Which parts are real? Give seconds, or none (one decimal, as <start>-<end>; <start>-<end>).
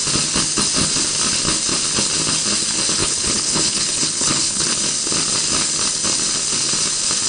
0.0-3.0; 4.8-7.3